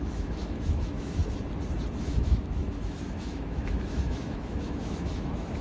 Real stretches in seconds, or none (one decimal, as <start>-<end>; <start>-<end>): 1.2-2.0